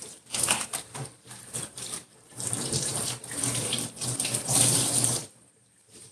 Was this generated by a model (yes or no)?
yes